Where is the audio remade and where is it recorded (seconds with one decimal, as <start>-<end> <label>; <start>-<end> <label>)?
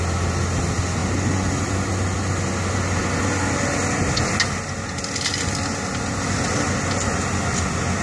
0.0-8.0 recorded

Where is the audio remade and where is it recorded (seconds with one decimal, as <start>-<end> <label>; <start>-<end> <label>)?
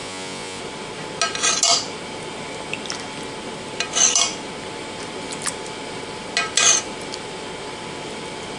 0.0-0.6 remade; 0.6-8.6 recorded